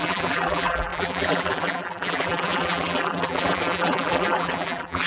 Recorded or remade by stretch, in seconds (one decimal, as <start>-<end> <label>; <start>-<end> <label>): 0.0-5.1 remade